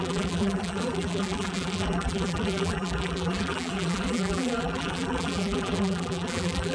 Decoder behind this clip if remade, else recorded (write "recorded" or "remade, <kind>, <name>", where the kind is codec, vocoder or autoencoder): remade, vocoder, BigVGAN v2